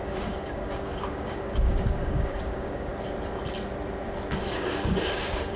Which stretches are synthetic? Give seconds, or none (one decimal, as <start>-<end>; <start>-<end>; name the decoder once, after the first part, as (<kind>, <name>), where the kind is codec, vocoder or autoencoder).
0.0-2.9 (codec, DAC); 4.5-5.6